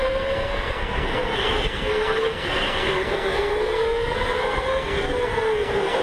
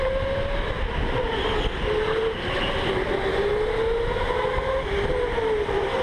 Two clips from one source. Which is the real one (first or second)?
second